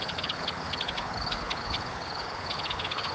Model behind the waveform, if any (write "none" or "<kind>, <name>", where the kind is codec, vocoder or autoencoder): codec, HILCodec